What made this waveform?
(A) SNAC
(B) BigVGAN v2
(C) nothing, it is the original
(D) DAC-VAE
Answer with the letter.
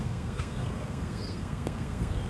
A